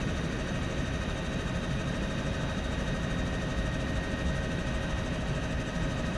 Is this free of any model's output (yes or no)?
yes